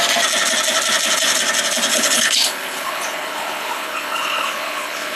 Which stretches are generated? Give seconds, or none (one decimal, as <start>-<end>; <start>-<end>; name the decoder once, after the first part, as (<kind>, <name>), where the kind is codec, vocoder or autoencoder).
1.9-5.2 (codec, HILCodec)